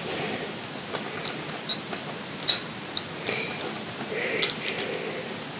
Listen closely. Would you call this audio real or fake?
real